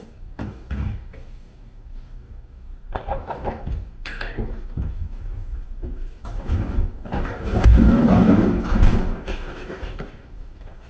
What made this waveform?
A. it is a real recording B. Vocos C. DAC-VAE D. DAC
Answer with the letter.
D